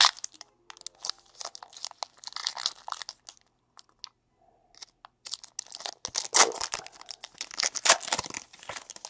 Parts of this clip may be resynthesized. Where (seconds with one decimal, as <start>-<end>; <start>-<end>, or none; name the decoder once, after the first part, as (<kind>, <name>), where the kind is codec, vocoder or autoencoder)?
none